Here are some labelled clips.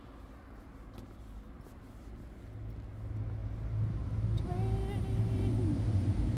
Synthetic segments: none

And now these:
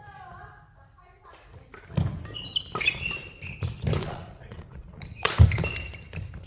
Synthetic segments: 4.0-5.3 (vocoder, Vocos)

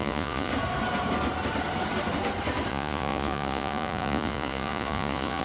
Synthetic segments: 0.0-0.5 (vocoder, Vocos); 2.7-5.4

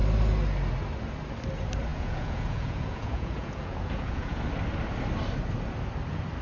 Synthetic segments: 1.9-4.4 (vocoder, Vocos)